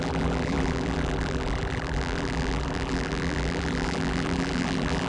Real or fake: fake